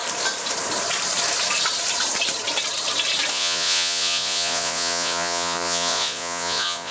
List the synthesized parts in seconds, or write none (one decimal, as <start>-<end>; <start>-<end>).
3.3-6.9